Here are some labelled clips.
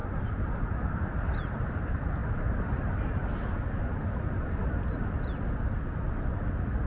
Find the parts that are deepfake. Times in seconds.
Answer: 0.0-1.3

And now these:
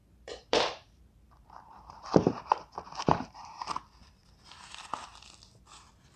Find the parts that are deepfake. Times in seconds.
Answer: 0.0-3.7

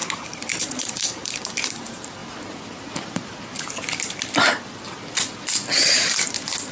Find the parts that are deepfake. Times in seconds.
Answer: 0.0-2.2; 5.7-6.7

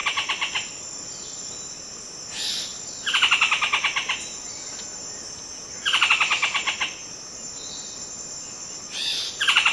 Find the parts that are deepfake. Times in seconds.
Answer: none

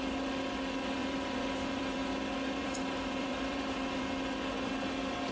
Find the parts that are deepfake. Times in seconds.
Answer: 1.0-4.1

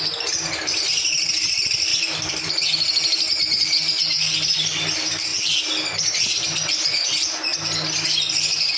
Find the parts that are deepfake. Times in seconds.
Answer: none

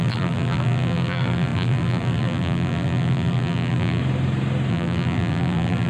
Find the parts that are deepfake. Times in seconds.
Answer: 0.0-4.0; 4.7-5.9

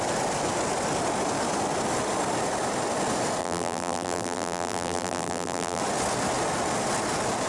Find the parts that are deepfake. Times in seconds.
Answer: 3.4-5.8